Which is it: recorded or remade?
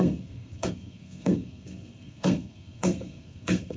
remade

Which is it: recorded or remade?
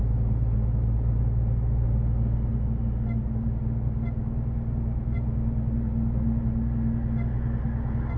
recorded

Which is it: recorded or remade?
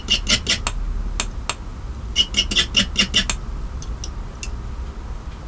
recorded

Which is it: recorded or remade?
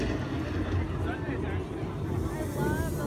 recorded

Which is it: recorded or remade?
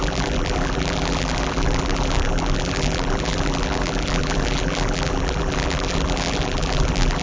remade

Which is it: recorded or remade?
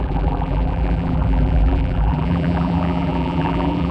remade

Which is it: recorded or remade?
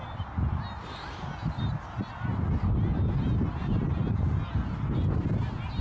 recorded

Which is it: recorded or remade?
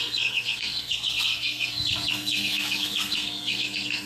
remade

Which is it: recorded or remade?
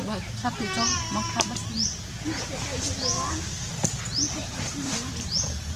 recorded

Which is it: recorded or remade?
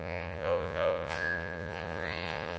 remade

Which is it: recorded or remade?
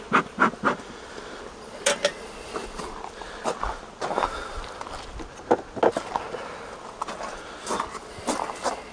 recorded